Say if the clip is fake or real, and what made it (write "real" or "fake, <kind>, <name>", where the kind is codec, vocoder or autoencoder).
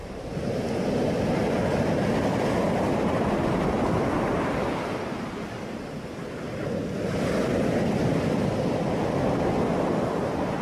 real